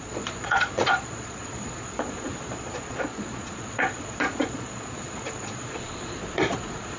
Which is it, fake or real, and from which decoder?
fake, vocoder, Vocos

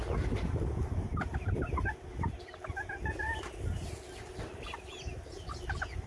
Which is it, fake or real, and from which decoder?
real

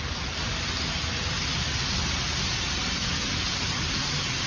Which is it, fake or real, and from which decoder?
real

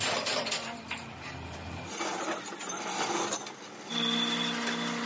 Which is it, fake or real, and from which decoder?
real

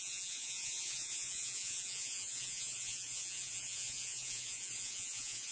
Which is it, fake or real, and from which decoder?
fake, vocoder, Vocos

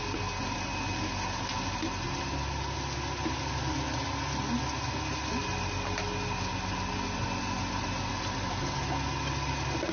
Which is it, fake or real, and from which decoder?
real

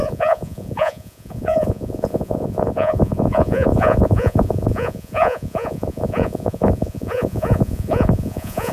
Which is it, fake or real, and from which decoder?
fake, vocoder, Vocos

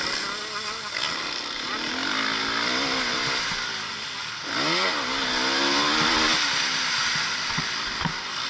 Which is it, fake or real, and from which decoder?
real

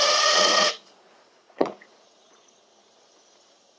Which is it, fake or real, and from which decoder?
fake, vocoder, Vocos